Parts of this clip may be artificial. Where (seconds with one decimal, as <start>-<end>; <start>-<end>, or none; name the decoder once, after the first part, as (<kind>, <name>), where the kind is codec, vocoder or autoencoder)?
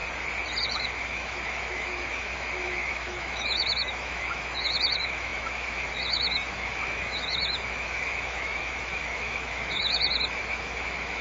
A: 0.6-11.2 (autoencoder, DAC-VAE)